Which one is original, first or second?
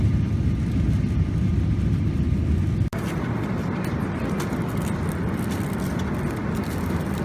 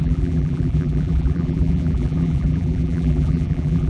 first